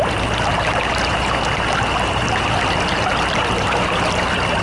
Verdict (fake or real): real